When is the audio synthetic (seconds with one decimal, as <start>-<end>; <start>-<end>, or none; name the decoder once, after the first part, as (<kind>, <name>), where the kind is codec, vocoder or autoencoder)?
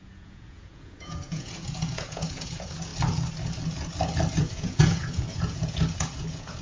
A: 0.0-2.9 (vocoder, Vocos); 4.4-6.6